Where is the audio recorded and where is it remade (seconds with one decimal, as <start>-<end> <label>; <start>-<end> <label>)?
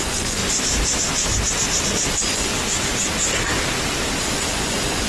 0.0-0.4 remade; 0.4-2.1 recorded; 2.1-2.5 remade; 2.5-4.2 recorded; 4.2-5.1 remade